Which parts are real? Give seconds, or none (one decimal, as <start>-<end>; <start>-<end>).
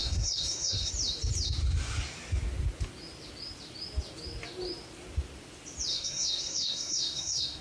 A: 0.9-5.9